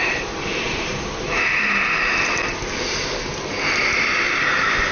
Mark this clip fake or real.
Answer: real